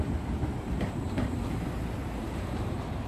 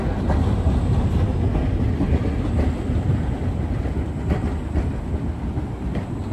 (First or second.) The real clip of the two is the second